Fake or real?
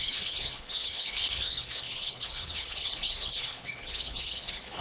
fake